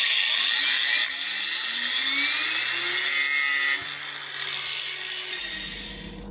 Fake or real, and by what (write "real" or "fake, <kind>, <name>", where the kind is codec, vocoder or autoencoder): real